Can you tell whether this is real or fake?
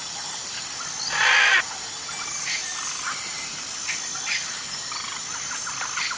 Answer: real